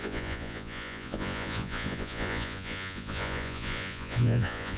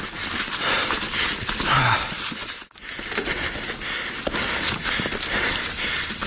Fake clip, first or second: first